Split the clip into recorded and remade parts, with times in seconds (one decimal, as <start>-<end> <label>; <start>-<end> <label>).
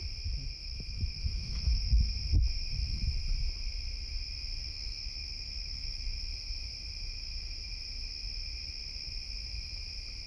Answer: 0.0-0.6 recorded; 0.6-2.0 remade; 2.0-4.6 recorded; 4.6-6.2 remade; 6.2-10.3 recorded